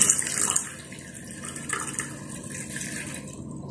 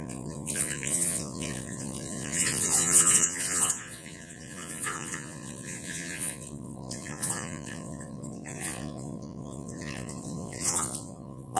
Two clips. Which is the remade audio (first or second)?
second